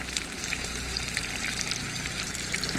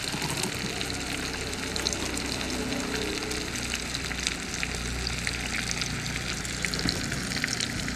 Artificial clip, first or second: first